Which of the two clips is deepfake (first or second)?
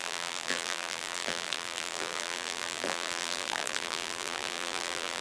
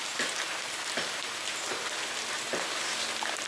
first